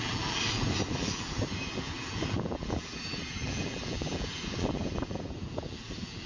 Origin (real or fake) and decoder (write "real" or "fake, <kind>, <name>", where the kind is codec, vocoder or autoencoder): fake, vocoder, BigVGAN v2